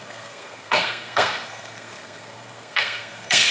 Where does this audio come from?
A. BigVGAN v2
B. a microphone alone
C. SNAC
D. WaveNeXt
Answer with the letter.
C